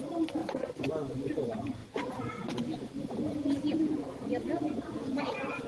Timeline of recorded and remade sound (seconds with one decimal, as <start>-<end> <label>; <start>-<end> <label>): 0.0-1.8 recorded; 1.8-5.2 remade; 5.2-5.7 recorded